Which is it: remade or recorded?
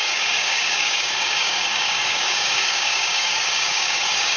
remade